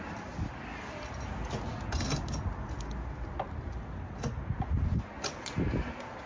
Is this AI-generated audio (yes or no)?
no